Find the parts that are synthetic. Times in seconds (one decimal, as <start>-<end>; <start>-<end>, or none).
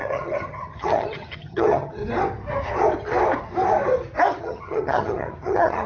0.0-2.0; 4.4-5.9